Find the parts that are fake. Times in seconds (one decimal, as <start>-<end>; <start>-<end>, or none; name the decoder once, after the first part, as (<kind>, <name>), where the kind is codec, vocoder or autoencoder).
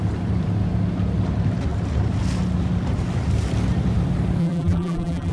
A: 4.4-5.3 (vocoder, BigVGAN v2)